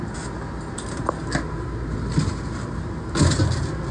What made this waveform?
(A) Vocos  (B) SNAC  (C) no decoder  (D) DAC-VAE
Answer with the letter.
C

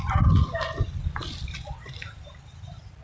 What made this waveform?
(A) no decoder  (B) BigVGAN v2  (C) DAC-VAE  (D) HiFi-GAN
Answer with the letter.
B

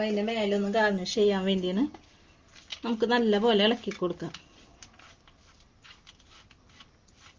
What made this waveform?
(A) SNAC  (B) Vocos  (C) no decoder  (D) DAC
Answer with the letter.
C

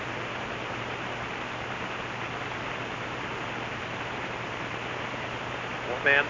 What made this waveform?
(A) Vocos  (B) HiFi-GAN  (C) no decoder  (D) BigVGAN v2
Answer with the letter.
C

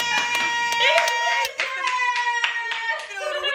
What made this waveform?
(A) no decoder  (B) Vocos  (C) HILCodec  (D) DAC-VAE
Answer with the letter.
A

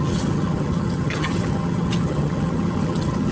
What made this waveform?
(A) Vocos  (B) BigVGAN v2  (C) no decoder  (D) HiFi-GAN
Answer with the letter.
D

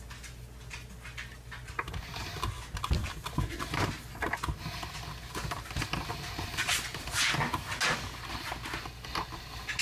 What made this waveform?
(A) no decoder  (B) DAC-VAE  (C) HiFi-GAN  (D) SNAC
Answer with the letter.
A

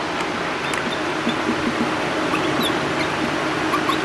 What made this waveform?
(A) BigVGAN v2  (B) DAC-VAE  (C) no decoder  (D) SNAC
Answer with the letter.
C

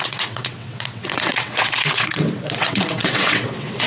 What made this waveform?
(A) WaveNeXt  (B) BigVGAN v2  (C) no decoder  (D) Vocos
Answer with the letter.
A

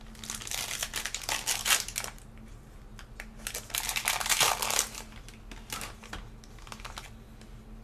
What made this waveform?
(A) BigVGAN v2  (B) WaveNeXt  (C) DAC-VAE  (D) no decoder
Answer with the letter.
D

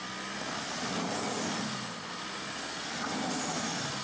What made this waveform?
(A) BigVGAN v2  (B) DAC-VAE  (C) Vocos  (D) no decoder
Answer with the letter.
D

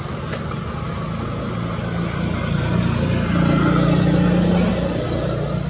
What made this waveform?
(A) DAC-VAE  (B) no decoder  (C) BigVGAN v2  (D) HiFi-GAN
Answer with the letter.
B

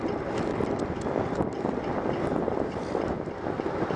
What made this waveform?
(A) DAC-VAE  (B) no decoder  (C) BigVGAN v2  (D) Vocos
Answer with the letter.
B